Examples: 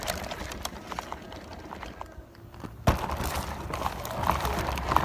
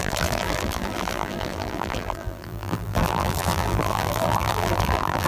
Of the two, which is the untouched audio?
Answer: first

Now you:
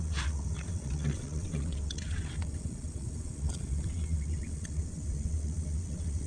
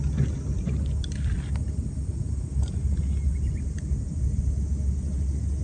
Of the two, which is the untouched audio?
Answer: second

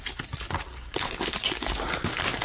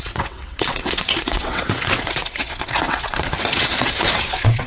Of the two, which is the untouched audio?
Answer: first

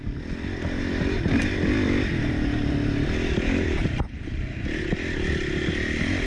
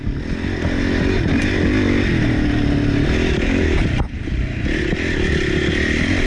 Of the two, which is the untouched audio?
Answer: second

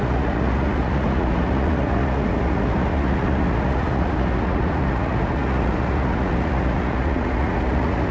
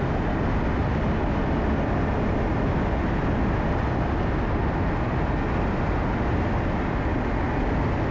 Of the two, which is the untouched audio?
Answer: second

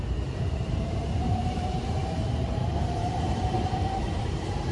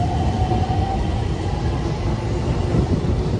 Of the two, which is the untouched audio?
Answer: second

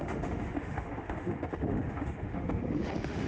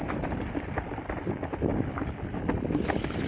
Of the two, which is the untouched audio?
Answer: second